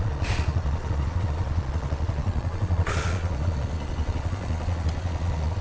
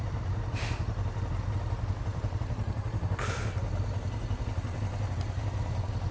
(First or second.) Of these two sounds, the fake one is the first